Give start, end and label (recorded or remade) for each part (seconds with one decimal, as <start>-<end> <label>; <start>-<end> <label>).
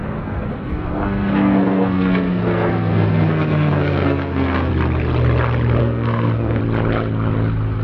0.0-4.7 remade; 4.7-5.8 recorded; 5.8-6.6 remade; 6.6-7.8 recorded